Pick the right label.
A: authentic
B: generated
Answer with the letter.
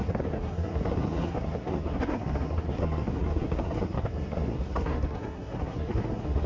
B